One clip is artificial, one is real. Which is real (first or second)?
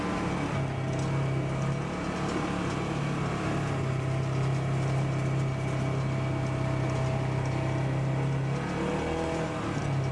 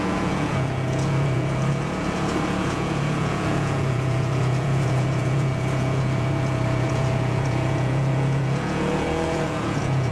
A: first